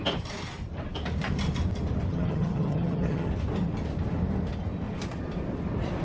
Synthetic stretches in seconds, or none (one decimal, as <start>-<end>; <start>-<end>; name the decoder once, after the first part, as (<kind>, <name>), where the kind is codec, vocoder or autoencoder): 2.1-3.3 (vocoder, HiFi-GAN)

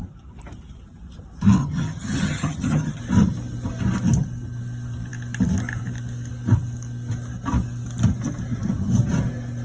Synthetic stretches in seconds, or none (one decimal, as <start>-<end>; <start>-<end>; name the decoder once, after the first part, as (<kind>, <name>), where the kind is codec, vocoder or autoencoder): 1.6-3.0 (vocoder, HiFi-GAN)